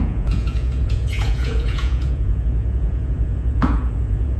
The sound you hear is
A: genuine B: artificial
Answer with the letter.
B